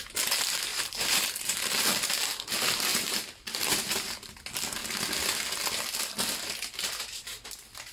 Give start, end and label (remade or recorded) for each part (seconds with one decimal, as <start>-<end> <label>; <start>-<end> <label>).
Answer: 0.0-0.7 recorded; 0.7-1.8 remade; 1.8-2.9 recorded; 2.9-4.3 remade; 4.3-7.9 recorded